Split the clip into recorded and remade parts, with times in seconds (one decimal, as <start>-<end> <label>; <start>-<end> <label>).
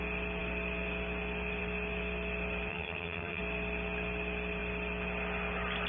0.0-2.7 recorded; 2.7-3.4 remade; 3.4-5.9 recorded